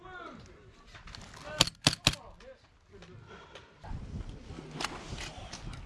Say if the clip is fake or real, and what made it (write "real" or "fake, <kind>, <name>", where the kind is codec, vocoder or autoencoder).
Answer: real